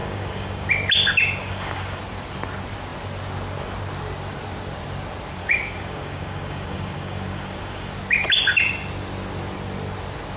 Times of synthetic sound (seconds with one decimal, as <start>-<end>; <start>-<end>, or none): 0.0-0.7; 1.4-2.0; 5.4-7.9